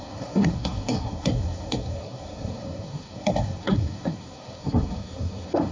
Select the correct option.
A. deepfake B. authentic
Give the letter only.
A